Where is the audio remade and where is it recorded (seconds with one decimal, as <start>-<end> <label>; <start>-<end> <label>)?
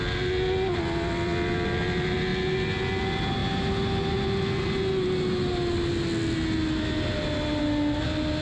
0.0-8.4 recorded